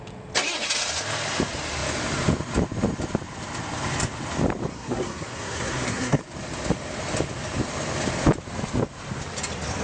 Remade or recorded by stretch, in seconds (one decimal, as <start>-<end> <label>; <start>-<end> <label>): 0.0-4.7 recorded; 4.7-6.2 remade; 6.2-9.8 recorded